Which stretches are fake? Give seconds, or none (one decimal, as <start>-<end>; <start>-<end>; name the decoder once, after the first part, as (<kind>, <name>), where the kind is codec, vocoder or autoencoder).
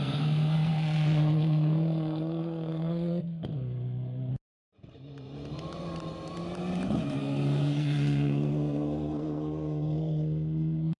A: 0.0-4.3 (codec, SNAC); 7.2-11.0